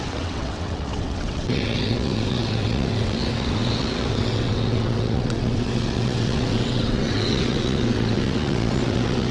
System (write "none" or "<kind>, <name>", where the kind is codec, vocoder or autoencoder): vocoder, WaveNeXt